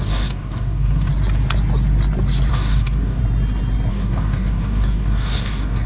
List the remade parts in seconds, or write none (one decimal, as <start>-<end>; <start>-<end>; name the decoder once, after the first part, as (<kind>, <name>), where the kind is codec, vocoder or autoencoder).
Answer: 0.0-1.1 (codec, DAC); 2.5-3.2; 3.9-5.9